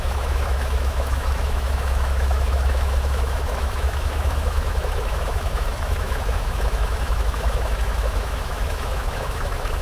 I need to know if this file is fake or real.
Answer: fake